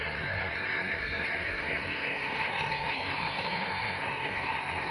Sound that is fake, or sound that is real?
fake